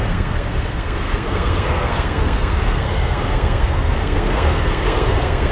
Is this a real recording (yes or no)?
no